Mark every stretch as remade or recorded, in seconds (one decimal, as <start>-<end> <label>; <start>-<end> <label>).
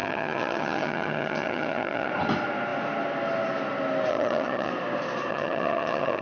0.0-2.1 remade; 2.1-4.1 recorded; 4.1-4.7 remade; 4.7-5.3 recorded; 5.3-6.2 remade